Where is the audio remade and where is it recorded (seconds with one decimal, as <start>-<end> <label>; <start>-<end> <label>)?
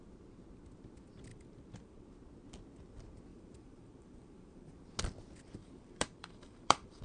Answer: 0.0-1.3 recorded; 1.3-2.0 remade; 2.0-3.3 recorded; 3.3-4.7 remade; 4.7-5.6 recorded; 5.6-7.0 remade